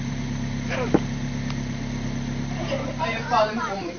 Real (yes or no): no